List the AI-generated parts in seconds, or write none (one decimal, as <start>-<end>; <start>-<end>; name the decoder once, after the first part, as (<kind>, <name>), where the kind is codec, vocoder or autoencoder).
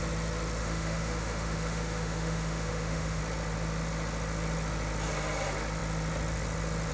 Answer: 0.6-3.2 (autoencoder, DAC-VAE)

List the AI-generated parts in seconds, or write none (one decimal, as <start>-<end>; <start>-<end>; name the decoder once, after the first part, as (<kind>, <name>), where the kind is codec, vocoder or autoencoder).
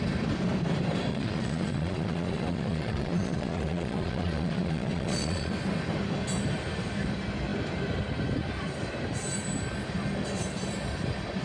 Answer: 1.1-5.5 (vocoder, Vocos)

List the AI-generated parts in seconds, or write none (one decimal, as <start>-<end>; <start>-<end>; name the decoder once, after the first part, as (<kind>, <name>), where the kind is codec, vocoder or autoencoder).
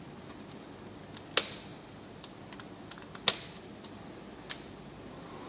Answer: none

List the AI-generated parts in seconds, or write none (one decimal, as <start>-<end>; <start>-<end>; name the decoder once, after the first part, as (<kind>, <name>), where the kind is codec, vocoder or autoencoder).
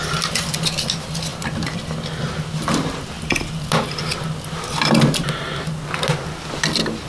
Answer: none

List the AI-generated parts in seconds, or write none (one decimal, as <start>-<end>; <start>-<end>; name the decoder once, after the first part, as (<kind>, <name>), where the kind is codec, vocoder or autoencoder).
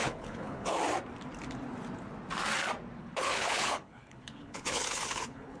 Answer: 0.0-0.8 (codec, HILCodec); 3.0-5.6